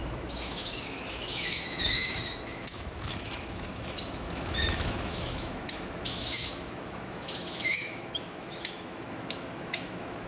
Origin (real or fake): fake